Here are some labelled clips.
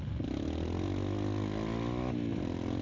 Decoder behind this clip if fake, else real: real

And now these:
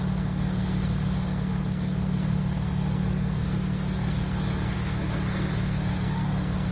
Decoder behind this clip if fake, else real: fake, codec, SNAC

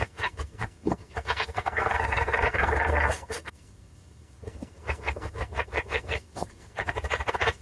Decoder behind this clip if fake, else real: fake, codec, SNAC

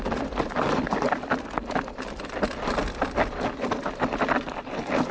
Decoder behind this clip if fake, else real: real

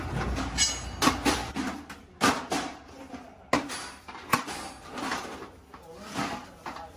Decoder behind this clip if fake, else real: real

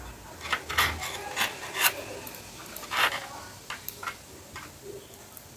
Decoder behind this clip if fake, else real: real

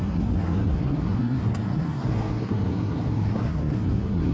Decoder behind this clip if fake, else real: fake, codec, SNAC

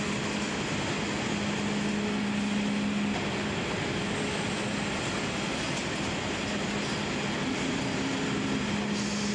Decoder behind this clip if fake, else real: real